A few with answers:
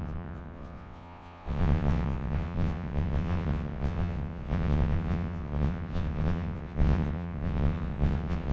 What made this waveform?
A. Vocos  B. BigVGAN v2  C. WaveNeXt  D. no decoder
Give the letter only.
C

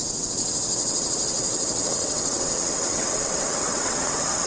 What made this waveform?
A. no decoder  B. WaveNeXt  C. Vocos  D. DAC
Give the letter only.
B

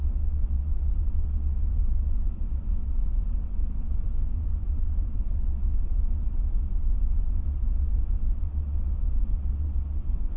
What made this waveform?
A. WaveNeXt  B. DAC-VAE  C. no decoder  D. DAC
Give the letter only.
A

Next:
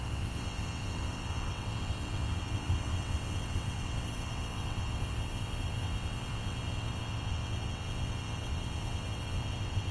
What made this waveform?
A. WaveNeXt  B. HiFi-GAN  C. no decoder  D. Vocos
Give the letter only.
A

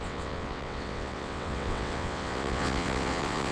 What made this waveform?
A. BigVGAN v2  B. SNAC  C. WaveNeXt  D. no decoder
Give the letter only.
C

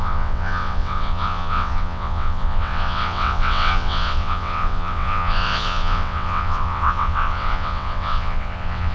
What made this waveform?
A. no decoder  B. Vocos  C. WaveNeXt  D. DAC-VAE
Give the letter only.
C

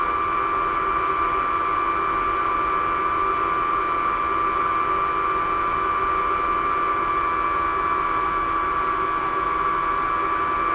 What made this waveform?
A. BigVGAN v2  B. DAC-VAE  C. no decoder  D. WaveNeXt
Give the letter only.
C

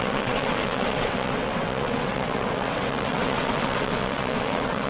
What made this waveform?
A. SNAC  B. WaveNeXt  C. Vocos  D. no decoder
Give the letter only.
B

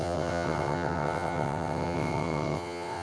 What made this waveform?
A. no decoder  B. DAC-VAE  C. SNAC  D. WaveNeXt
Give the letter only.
D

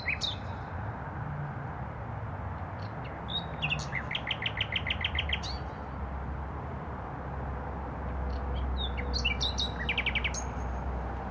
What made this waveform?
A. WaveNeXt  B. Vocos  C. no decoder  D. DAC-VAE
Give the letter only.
C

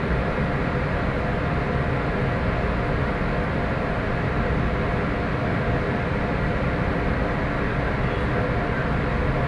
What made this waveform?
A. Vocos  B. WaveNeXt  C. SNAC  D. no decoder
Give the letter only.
D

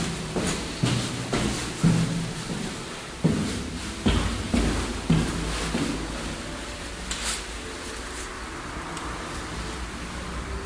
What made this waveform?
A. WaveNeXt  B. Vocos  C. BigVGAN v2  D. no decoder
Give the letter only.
D